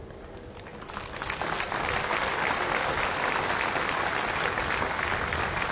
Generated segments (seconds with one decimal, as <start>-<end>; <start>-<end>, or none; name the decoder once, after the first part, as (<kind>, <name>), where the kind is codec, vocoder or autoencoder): none

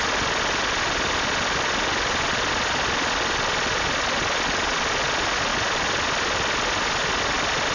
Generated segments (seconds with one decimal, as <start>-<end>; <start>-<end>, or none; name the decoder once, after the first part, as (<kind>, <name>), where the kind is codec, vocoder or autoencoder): none

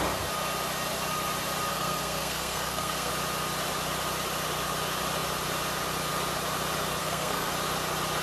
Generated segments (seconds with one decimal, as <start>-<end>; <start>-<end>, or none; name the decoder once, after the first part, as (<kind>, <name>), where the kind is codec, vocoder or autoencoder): 1.7-3.1 (codec, SNAC); 7.0-7.5